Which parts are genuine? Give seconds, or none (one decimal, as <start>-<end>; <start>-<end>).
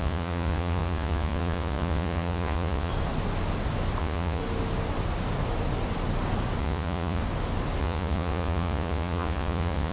2.9-4.0; 4.4-6.6; 7.2-7.8